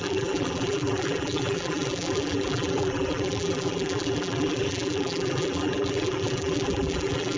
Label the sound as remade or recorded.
remade